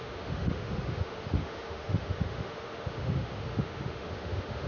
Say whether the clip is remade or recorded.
remade